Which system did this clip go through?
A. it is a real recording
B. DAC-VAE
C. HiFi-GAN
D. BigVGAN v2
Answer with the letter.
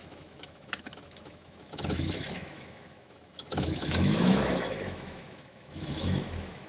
B